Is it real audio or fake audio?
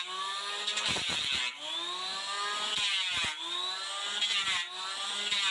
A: real